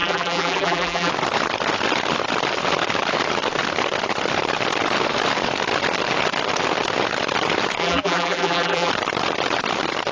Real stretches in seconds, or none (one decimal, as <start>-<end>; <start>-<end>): 1.1-7.8; 8.9-10.1